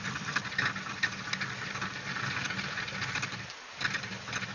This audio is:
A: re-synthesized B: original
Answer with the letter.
B